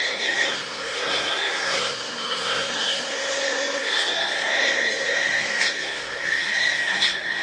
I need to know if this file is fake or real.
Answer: fake